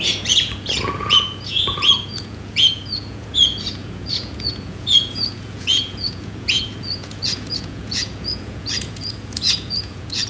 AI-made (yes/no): yes